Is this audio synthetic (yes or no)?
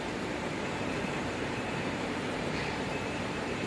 yes